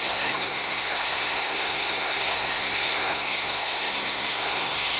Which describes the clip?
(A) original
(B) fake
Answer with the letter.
B